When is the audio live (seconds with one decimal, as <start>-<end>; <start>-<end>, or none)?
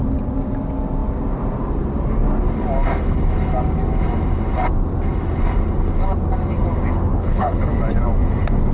0.0-7.1; 7.7-8.7